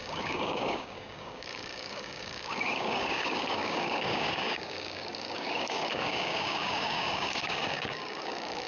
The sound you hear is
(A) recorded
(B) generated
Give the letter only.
B